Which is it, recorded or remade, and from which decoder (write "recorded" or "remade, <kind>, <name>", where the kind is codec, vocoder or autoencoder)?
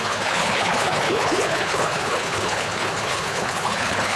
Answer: remade, codec, HILCodec